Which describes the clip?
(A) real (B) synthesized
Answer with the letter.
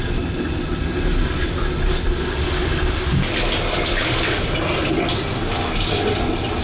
A